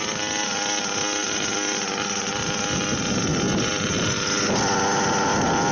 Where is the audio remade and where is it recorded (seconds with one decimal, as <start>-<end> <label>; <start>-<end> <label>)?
0.0-5.7 recorded